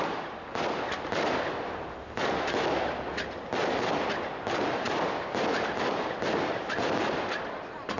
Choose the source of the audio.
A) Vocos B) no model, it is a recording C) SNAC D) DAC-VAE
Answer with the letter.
B